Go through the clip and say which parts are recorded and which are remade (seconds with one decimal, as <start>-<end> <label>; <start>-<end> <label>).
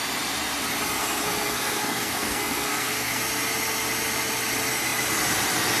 0.0-1.0 recorded; 1.0-3.2 remade; 3.2-5.8 recorded